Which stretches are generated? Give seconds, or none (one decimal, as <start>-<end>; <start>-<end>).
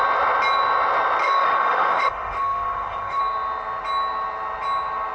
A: 1.2-3.2